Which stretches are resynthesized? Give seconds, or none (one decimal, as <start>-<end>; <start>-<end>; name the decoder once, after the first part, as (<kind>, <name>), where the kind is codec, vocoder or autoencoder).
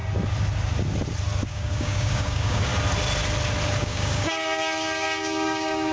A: 1.5-2.7 (codec, DAC); 3.8-5.9